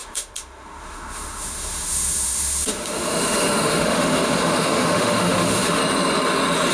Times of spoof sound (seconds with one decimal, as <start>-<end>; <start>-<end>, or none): 0.0-5.8